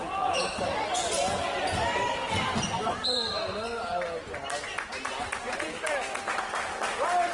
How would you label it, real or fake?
real